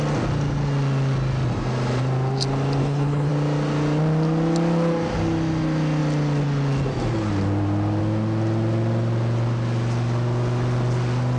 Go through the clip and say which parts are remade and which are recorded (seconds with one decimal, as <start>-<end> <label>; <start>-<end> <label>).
0.0-2.8 recorded; 2.8-3.3 remade; 3.3-11.4 recorded